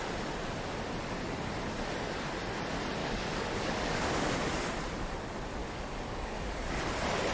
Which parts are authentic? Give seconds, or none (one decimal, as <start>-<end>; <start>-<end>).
0.0-3.0; 4.3-5.6; 6.8-7.3